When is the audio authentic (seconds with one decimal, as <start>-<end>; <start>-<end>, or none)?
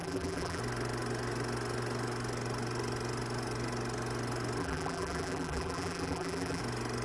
0.6-4.6; 6.6-7.0